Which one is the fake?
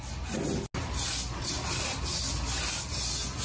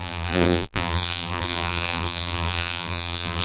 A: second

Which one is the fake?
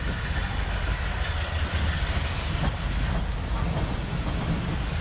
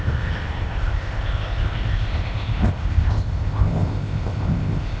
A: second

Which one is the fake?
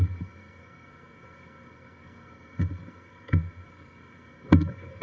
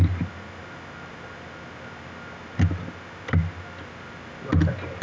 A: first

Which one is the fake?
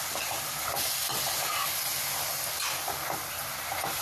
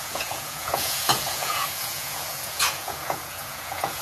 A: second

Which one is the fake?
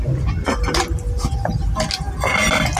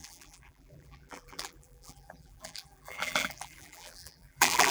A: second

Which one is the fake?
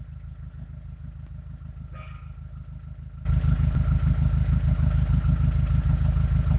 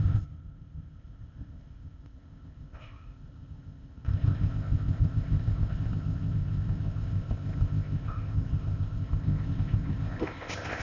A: second